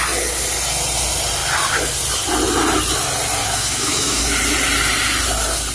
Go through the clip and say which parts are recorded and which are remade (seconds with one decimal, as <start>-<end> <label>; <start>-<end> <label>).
0.0-3.4 recorded; 3.4-4.2 remade; 4.2-5.7 recorded